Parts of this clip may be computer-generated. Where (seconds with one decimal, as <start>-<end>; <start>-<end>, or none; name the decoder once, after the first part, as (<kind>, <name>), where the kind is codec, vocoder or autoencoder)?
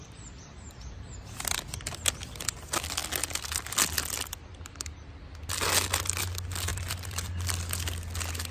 0.0-1.2 (vocoder, BigVGAN v2); 6.7-7.3